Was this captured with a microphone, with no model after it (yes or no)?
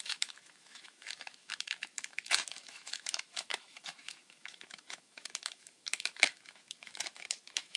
no